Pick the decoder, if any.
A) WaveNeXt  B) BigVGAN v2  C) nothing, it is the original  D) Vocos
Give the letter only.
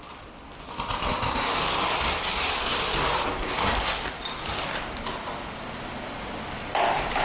C